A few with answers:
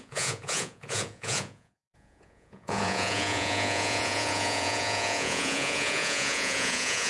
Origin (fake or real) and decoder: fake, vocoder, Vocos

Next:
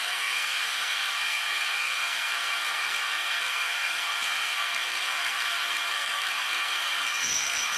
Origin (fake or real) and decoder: fake, codec, SNAC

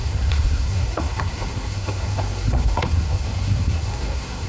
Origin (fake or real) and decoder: fake, codec, SNAC